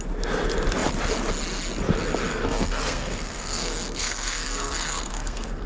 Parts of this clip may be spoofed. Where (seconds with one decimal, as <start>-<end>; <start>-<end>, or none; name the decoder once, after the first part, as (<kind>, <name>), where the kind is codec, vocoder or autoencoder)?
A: 2.3-5.7 (codec, SNAC)